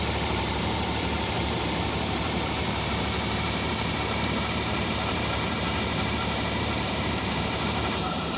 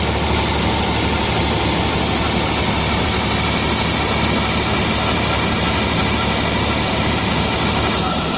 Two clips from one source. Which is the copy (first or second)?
first